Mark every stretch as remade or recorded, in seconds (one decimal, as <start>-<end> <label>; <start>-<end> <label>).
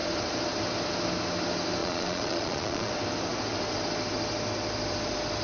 0.0-1.8 recorded; 1.8-2.9 remade; 2.9-5.4 recorded